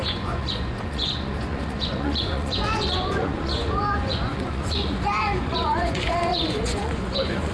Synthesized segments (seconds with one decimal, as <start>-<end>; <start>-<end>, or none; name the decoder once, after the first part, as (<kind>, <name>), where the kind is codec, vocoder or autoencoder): 0.0-7.5 (vocoder, Vocos)